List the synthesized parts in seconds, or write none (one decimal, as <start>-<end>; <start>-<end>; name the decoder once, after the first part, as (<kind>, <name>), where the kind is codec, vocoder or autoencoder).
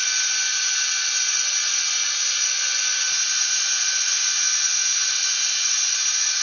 none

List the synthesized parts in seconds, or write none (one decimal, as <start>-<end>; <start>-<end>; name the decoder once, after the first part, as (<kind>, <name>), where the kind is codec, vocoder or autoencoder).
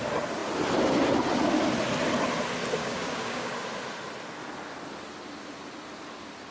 2.8-3.5 (codec, DAC)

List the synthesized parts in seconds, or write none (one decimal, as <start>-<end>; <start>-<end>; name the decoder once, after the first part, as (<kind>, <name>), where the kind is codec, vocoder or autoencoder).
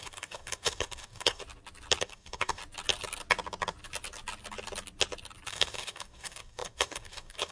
0.0-1.4 (codec, DAC); 2.0-2.6; 5.5-7.5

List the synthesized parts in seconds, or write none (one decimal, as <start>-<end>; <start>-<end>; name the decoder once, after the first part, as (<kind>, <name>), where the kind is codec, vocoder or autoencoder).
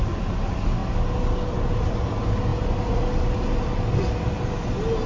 none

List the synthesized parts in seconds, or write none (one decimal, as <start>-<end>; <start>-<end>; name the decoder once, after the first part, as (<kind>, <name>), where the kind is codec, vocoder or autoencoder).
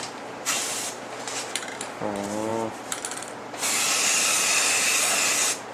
none